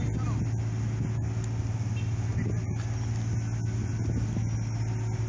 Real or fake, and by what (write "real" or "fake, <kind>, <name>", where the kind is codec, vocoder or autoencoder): real